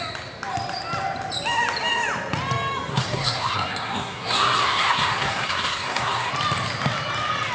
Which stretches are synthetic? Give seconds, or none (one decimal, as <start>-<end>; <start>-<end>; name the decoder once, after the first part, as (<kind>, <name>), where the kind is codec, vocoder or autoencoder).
2.9-6.3 (codec, SNAC)